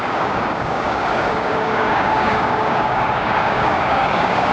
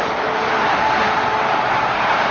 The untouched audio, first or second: second